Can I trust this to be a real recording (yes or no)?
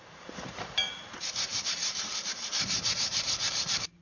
no